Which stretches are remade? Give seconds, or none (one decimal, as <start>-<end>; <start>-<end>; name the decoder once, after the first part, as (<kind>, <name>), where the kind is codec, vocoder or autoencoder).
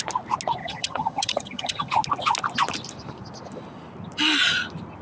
0.6-1.9 (vocoder, HiFi-GAN)